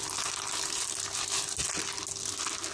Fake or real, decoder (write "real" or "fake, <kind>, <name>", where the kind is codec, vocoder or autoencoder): real